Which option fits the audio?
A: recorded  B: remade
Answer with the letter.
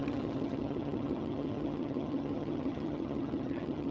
B